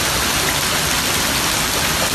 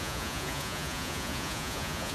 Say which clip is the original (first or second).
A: first